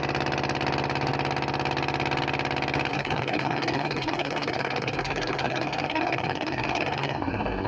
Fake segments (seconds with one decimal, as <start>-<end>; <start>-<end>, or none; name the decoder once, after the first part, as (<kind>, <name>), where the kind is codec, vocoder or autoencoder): 2.9-7.7 (codec, SNAC)